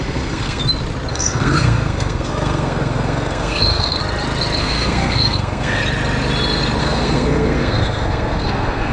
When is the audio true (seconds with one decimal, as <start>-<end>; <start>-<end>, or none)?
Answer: 0.6-1.1; 4.0-4.6; 5.8-6.8